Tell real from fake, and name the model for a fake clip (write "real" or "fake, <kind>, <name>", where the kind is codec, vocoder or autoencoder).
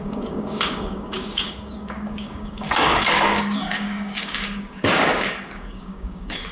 fake, codec, DAC